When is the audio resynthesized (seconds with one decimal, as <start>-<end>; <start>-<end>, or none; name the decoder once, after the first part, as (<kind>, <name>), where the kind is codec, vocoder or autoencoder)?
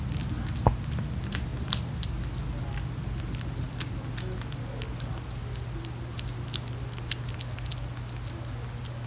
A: none